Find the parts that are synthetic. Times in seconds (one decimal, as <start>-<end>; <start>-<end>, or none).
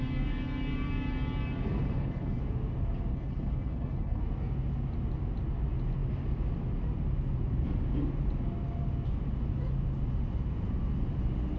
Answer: 1.8-2.4; 3.1-4.2